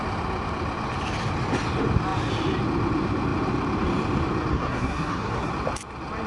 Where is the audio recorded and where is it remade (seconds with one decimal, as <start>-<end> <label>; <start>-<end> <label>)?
0.0-4.5 recorded; 4.5-5.5 remade; 5.5-6.3 recorded